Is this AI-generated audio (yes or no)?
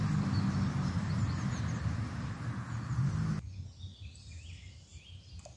no